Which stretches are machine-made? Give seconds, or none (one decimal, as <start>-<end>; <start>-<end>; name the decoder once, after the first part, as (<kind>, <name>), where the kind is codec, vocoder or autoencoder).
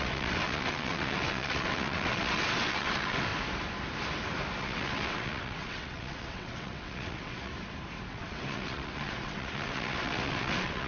0.0-3.3 (vocoder, WaveNeXt); 4.6-7.5; 8.1-10.9